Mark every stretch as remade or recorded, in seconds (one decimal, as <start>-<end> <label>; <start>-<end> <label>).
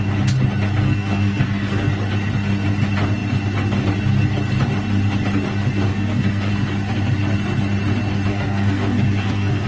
0.0-0.8 recorded; 0.8-1.9 remade; 1.9-5.9 recorded; 5.9-6.5 remade; 6.5-8.3 recorded; 8.3-9.7 remade